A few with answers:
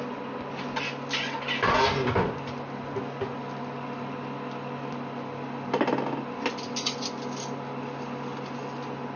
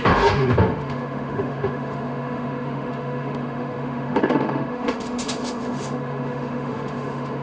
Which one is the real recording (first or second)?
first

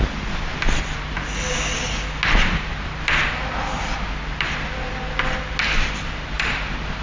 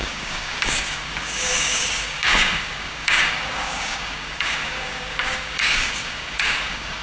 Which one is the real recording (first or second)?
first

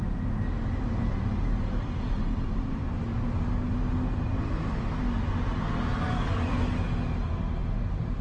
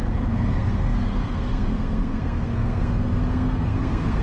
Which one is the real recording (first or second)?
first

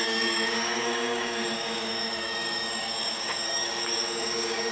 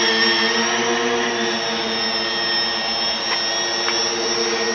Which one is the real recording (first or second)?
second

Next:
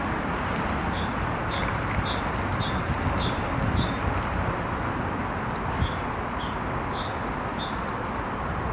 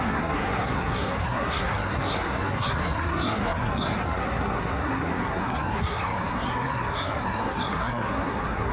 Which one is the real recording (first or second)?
first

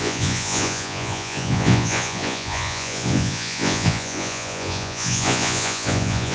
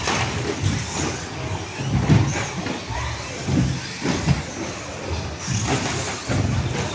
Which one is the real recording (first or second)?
second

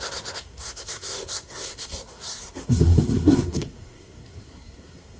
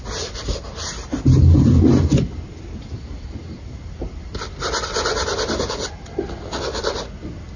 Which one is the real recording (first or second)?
second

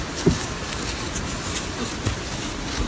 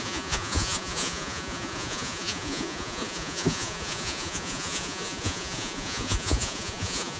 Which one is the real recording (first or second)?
first